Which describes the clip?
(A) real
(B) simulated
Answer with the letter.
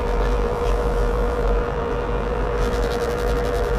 B